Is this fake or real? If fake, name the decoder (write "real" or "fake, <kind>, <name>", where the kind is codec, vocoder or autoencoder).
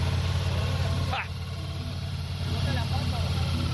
real